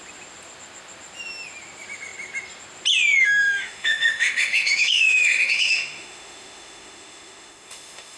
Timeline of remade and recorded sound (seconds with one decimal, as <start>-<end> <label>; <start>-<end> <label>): 0.0-3.2 recorded; 3.2-8.2 remade

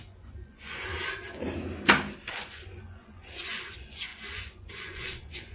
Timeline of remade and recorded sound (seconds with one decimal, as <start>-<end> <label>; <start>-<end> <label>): 0.0-0.9 remade; 0.9-2.3 recorded; 2.3-5.5 remade

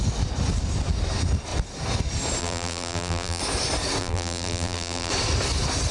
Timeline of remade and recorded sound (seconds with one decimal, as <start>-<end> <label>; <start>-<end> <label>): 0.0-2.4 recorded; 2.4-3.4 remade; 3.4-4.0 recorded; 4.0-5.1 remade; 5.1-5.9 recorded

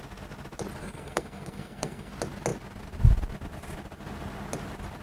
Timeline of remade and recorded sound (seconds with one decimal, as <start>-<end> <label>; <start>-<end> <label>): 0.0-0.8 recorded; 0.8-2.1 remade; 2.1-5.0 recorded

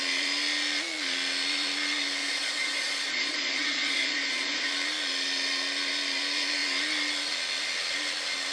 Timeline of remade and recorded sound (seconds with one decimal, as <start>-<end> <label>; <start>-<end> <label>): 0.0-2.2 recorded; 2.2-4.7 remade; 4.7-8.5 recorded

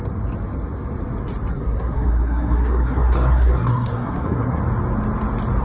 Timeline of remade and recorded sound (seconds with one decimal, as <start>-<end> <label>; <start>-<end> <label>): 0.0-1.5 recorded; 1.5-4.6 remade; 4.6-5.6 recorded

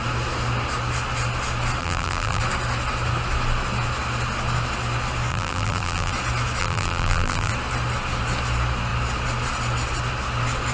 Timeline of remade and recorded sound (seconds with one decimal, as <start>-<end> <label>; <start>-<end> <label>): 0.0-1.8 recorded; 1.8-2.4 remade; 2.4-5.3 recorded; 5.3-6.1 remade; 6.1-6.6 recorded; 6.6-7.5 remade; 7.5-10.7 recorded